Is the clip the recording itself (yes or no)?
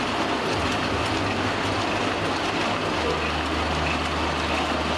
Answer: yes